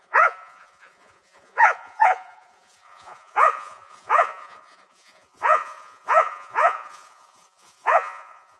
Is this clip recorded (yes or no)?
no